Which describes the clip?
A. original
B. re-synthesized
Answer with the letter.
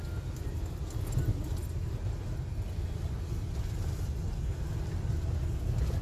A